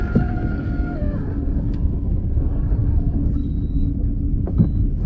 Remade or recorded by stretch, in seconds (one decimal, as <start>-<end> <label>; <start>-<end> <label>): 0.0-5.1 remade